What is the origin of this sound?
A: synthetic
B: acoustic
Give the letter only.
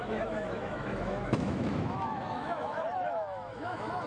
A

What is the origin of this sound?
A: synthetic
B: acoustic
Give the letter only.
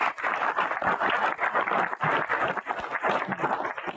B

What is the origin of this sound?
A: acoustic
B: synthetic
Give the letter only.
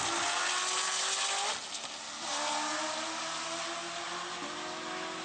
A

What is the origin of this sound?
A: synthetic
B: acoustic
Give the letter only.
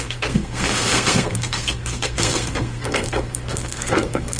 A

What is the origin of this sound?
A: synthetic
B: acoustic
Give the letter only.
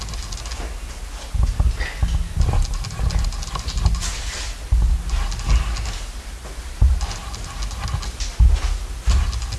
B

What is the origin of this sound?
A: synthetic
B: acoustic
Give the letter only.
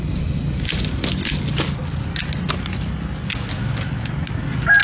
B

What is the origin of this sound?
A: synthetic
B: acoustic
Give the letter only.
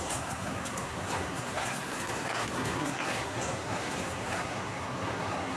A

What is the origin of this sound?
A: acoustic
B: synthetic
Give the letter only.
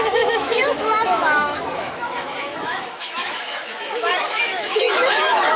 B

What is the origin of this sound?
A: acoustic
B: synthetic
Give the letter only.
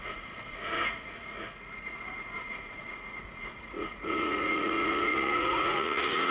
B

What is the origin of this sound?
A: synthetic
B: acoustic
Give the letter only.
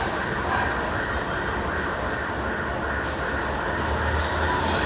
B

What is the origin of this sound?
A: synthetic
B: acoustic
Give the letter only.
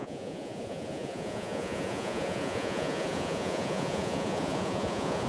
A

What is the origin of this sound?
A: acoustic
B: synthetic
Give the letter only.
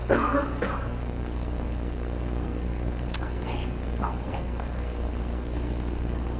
B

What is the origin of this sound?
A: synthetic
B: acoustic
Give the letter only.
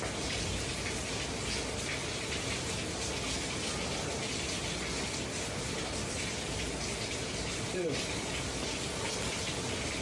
B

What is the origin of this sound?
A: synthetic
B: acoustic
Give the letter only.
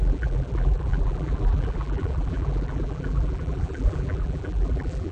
A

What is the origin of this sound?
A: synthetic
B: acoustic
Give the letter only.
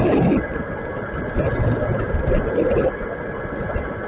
B